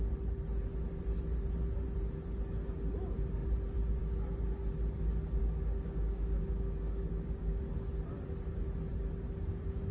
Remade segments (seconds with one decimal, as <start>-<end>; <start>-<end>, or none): 5.4-7.6